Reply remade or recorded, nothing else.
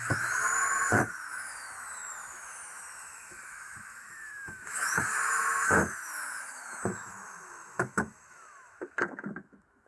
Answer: remade